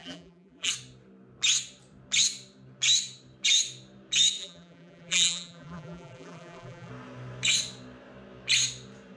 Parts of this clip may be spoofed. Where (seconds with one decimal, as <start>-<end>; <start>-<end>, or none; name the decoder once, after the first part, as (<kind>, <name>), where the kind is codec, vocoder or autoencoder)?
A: 0.0-0.7 (vocoder, BigVGAN v2); 4.4-6.9